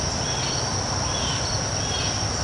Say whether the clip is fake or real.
real